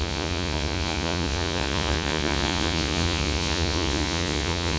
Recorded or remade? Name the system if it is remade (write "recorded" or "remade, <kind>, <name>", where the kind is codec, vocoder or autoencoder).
remade, vocoder, Vocos